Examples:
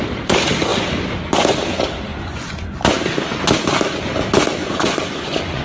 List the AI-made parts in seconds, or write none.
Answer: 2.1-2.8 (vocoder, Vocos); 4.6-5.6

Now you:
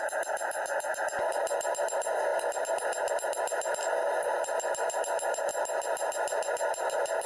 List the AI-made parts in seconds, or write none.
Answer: none

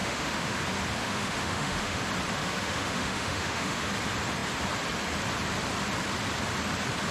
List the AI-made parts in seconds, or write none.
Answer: 0.0-0.6 (autoencoder, DAC-VAE); 1.0-2.0; 2.4-3.9

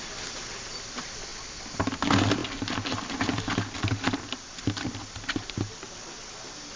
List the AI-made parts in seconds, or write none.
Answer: none

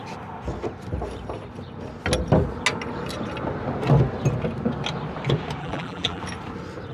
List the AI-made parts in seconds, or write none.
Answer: 5.6-6.2 (vocoder, BigVGAN v2)

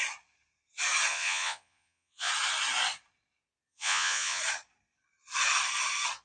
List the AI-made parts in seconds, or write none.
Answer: 1.1-2.3 (vocoder, Vocos); 3.7-4.4